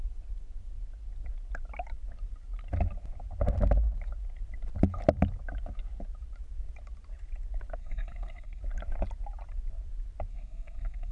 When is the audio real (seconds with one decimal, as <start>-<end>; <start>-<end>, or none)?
0.0-7.8; 8.6-10.3